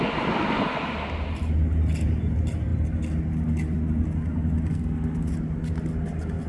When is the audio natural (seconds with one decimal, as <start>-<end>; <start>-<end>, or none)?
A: 0.0-4.7; 5.3-6.5